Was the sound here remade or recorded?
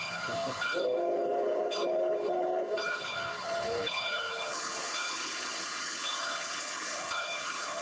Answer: remade